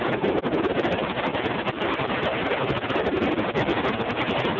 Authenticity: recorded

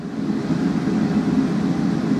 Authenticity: recorded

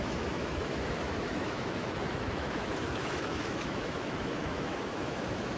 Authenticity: remade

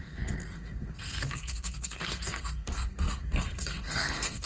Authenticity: remade